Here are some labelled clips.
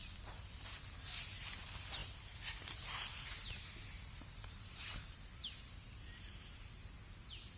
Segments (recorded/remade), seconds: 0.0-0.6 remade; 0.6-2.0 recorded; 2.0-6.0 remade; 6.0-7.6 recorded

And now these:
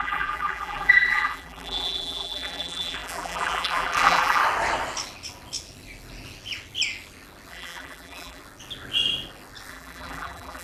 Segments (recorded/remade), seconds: 0.0-4.4 remade; 4.4-7.5 recorded; 7.5-8.4 remade; 8.4-9.7 recorded; 9.7-10.6 remade

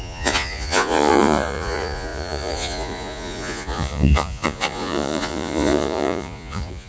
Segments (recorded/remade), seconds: 0.0-6.9 remade